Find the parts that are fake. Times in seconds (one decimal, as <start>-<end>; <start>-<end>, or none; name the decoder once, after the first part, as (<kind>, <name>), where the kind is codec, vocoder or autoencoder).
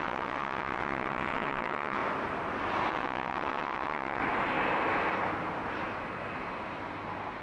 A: 0.0-2.0 (vocoder, WaveNeXt); 2.9-4.2